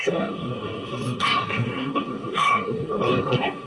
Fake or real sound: fake